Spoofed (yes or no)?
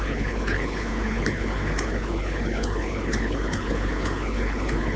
yes